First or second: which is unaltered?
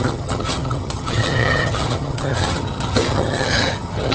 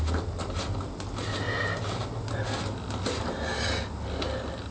second